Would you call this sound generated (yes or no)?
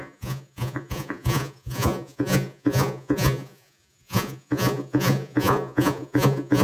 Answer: yes